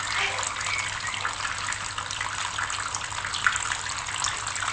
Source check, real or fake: real